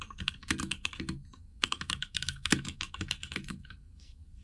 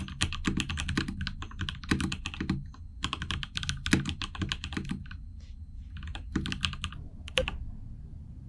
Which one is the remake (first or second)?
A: first